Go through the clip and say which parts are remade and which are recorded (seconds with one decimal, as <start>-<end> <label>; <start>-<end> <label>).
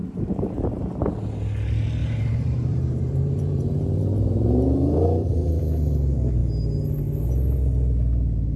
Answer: 0.0-1.1 remade; 1.1-2.0 recorded; 2.0-5.6 remade; 5.6-8.6 recorded